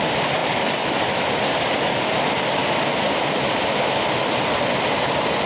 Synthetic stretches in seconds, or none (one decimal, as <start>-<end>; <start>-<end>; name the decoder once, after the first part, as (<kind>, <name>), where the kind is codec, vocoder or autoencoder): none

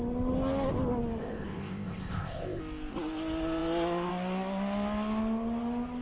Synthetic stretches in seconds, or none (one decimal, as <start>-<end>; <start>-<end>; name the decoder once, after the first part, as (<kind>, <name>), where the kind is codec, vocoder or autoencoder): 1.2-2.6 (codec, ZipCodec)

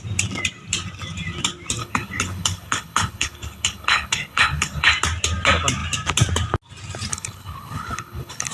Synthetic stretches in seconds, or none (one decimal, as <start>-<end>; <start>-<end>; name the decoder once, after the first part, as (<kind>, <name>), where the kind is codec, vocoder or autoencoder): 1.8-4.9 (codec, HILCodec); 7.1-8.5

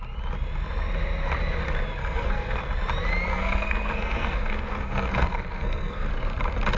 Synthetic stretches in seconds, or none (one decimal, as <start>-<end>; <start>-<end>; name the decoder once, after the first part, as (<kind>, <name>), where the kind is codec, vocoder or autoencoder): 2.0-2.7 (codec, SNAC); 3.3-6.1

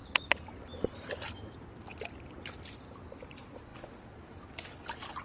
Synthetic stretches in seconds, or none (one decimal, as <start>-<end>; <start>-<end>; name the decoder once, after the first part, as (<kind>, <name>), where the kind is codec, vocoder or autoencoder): 0.0-1.1 (vocoder, BigVGAN v2)

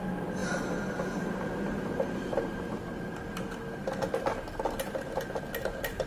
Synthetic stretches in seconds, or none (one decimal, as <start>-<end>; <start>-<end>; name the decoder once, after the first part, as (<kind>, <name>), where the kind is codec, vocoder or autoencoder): none

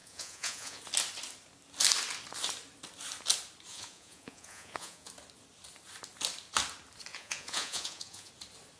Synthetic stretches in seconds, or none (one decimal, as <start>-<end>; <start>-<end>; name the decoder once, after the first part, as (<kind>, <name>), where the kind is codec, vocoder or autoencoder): 0.0-0.8 (vocoder, Vocos); 3.7-5.1; 7.1-8.3